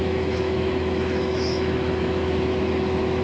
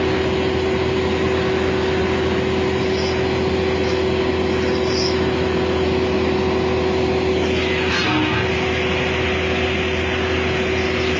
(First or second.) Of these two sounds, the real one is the second